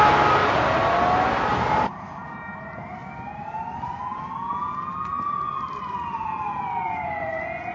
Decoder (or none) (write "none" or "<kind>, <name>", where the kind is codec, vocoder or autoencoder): none